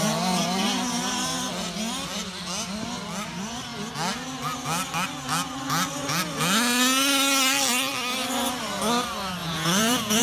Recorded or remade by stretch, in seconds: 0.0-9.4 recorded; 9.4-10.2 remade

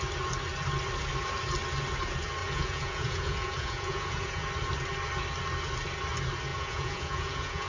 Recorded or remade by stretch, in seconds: 0.0-2.4 recorded; 2.4-4.5 remade; 4.5-6.5 recorded; 6.5-7.7 remade

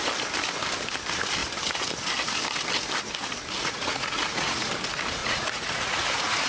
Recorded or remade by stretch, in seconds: 0.0-3.6 recorded; 3.6-4.7 remade; 4.7-5.2 recorded; 5.2-6.5 remade

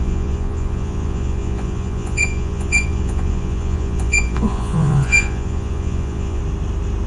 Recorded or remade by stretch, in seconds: 0.0-6.4 remade; 6.4-7.1 recorded

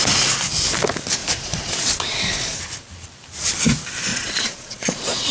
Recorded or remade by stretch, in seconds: 0.0-1.2 recorded; 1.2-2.6 remade; 2.6-4.1 recorded; 4.1-5.3 remade

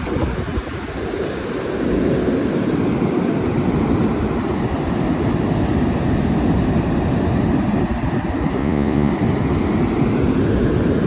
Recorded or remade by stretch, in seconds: 0.0-8.6 recorded; 8.6-9.1 remade; 9.1-11.1 recorded